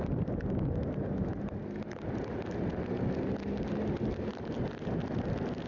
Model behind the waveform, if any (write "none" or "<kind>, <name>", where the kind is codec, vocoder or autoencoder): none